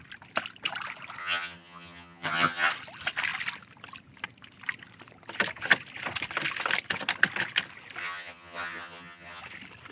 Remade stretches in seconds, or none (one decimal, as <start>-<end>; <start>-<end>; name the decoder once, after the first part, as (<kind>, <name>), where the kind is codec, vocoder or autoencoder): 1.2-2.7 (vocoder, HiFi-GAN); 8.0-9.4